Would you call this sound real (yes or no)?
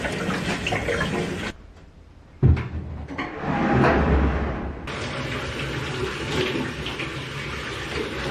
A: yes